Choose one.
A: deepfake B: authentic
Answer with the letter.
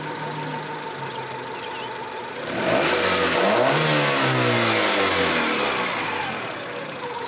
B